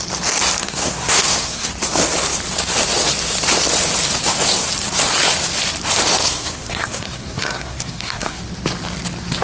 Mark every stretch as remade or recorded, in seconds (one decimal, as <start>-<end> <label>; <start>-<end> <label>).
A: 0.0-0.6 recorded; 0.6-1.7 remade; 1.7-6.2 recorded; 6.2-8.4 remade; 8.4-9.4 recorded

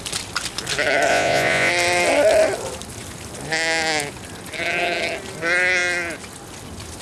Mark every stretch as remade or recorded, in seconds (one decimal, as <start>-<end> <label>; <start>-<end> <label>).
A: 0.0-1.1 recorded; 1.1-1.7 remade; 1.7-7.0 recorded

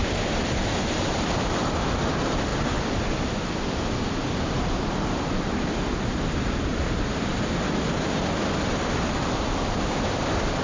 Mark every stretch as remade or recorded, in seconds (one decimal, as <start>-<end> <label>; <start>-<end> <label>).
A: 0.0-7.3 remade; 7.3-7.9 recorded; 7.9-10.6 remade

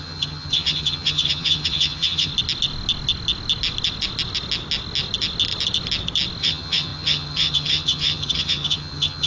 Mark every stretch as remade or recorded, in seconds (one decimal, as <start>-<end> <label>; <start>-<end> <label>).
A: 0.0-2.3 remade; 2.3-6.4 recorded; 6.4-9.3 remade

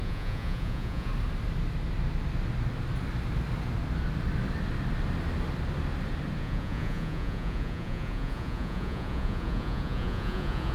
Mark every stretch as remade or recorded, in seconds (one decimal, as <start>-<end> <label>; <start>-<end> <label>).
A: 0.0-1.1 remade; 1.1-6.4 recorded; 6.4-10.7 remade

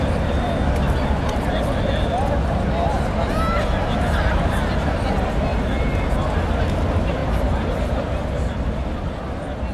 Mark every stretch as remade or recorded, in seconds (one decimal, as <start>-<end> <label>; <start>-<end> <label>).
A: 0.0-5.5 recorded; 5.5-6.1 remade; 6.1-7.2 recorded; 7.2-8.7 remade; 8.7-9.7 recorded

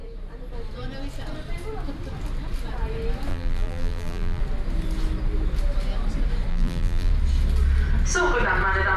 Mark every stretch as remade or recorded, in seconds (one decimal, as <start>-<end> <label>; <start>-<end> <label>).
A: 0.0-3.3 recorded; 3.3-4.4 remade; 4.4-6.5 recorded; 6.5-7.1 remade; 7.1-9.0 recorded

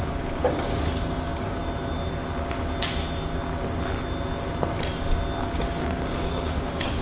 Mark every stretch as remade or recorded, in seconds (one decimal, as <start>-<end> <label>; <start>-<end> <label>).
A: 0.0-1.6 remade; 1.6-5.4 recorded; 5.4-7.0 remade